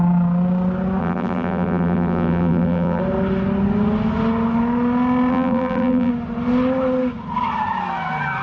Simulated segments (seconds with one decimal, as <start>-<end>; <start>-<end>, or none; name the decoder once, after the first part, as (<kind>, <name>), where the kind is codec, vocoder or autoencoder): 1.0-3.0 (vocoder, BigVGAN v2); 5.3-6.1